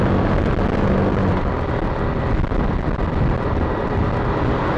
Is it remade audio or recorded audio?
recorded